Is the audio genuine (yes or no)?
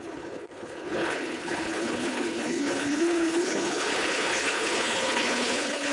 no